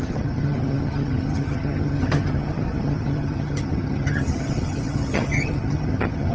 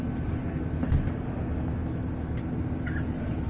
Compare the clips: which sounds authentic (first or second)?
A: second